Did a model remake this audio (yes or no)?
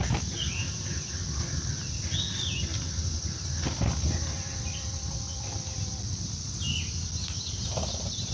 no